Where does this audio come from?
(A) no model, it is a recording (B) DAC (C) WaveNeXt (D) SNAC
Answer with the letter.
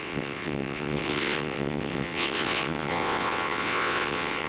C